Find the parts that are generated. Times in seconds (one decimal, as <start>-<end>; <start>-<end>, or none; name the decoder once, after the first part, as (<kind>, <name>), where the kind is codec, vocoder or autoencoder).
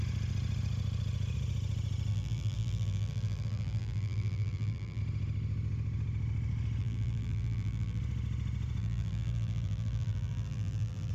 2.1-5.0 (vocoder, BigVGAN v2); 6.8-8.0; 8.8-11.1